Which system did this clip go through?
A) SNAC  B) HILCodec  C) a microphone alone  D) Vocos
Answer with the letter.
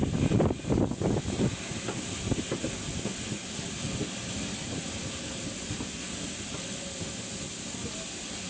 C